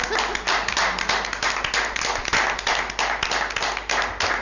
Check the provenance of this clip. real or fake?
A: real